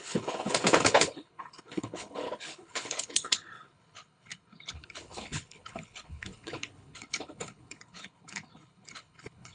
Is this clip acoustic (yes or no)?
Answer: no